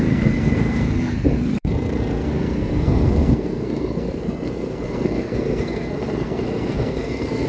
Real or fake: fake